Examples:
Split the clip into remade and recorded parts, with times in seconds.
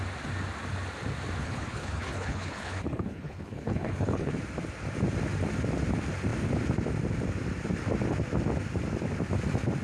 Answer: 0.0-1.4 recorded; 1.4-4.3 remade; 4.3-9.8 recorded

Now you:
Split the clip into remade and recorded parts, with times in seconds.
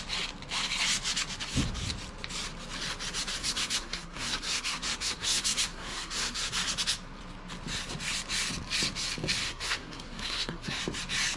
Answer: 0.0-3.4 recorded; 3.4-6.5 remade; 6.5-9.4 recorded; 9.4-10.8 remade; 10.8-11.4 recorded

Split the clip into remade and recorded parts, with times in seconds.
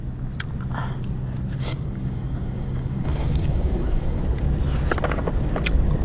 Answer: 0.0-1.6 recorded; 1.6-4.2 remade; 4.2-6.0 recorded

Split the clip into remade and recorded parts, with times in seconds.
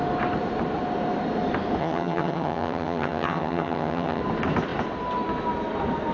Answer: 0.0-1.8 recorded; 1.8-4.2 remade; 4.2-6.1 recorded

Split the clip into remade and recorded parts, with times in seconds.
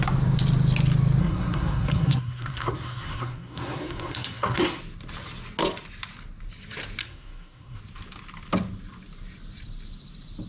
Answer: 0.0-1.2 recorded; 1.2-4.8 remade; 4.8-7.0 recorded; 7.0-7.8 remade; 7.8-10.5 recorded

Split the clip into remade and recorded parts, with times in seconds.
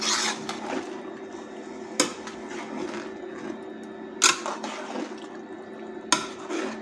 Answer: 0.0-6.8 recorded